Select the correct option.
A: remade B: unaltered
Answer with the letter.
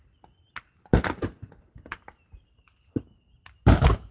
B